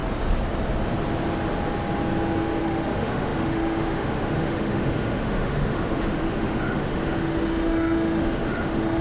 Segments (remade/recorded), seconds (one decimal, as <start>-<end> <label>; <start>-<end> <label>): 0.0-2.6 recorded; 2.6-9.0 remade